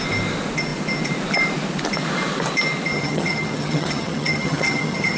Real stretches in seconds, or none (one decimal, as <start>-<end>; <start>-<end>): 0.0-2.9

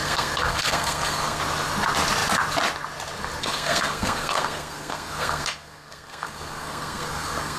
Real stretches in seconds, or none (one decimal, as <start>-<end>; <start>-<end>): 1.4-3.4

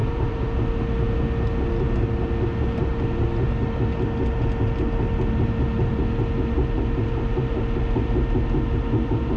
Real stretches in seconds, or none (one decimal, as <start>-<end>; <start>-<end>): 0.5-9.4

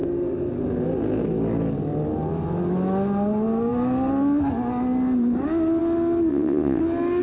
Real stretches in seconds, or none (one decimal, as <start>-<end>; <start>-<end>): 0.0-6.3; 6.8-7.2

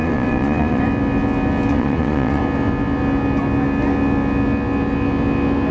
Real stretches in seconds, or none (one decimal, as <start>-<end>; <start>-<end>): 0.8-1.7; 2.4-5.7

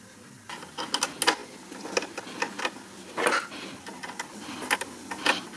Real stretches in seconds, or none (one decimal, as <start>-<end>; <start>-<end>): 0.0-5.6